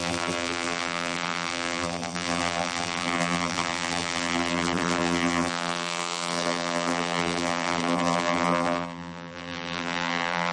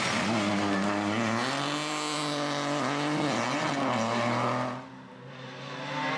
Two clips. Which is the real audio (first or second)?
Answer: second